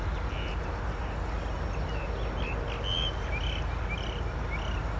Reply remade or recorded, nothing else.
recorded